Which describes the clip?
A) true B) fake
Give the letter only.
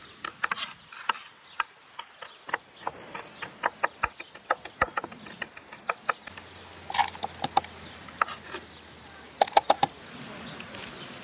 A